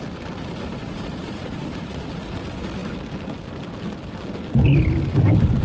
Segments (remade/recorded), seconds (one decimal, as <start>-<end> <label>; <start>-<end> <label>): 0.0-0.8 recorded; 0.8-2.1 remade; 2.1-5.6 recorded